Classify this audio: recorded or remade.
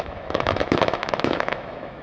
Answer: remade